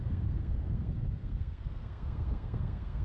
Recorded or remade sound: remade